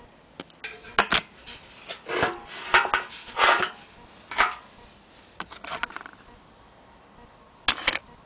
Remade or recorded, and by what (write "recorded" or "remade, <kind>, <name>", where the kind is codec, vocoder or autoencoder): recorded